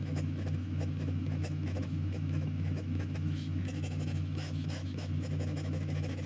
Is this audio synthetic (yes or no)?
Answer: yes